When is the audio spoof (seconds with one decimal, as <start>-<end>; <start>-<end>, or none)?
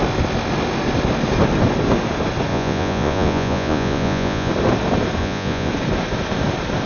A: 2.5-4.5; 5.2-5.7